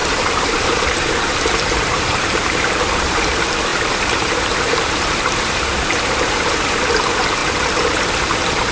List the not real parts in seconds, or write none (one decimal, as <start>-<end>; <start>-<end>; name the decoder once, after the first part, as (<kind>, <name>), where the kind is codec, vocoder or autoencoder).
0.0-3.1 (vocoder, BigVGAN v2); 3.7-6.8